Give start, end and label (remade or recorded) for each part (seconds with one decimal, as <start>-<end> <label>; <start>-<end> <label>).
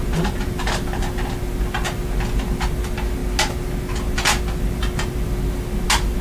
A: 0.0-6.2 recorded